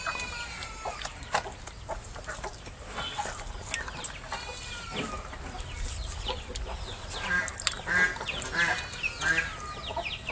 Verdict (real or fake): real